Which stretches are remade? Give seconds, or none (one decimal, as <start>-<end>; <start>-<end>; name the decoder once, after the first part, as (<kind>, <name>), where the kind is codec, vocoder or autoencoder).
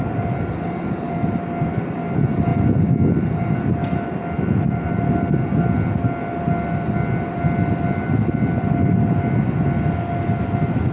none